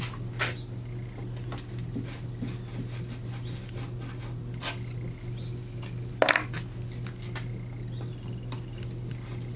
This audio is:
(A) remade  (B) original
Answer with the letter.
B